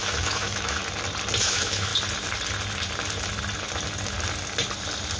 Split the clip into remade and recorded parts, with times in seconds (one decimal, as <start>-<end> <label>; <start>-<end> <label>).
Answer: 0.0-0.8 remade; 0.8-1.4 recorded; 1.4-1.9 remade; 1.9-5.2 recorded